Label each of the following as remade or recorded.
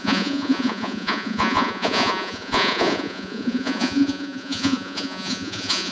remade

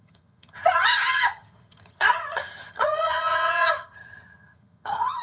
remade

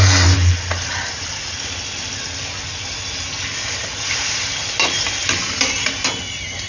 recorded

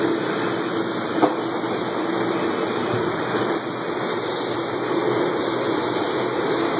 recorded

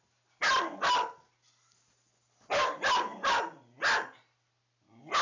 recorded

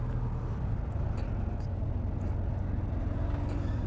recorded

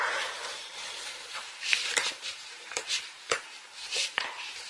remade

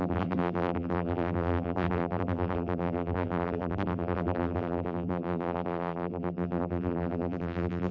remade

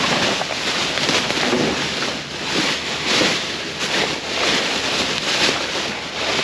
recorded